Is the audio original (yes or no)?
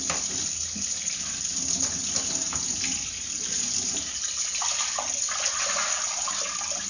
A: yes